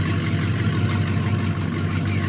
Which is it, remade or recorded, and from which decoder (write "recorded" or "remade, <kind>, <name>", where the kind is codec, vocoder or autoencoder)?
recorded